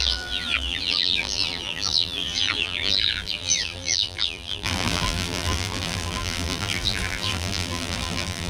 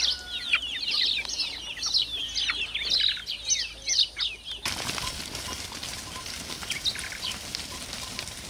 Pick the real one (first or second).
second